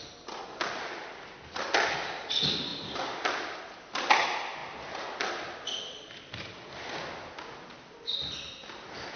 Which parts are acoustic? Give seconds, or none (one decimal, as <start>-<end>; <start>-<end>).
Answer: 0.0-9.2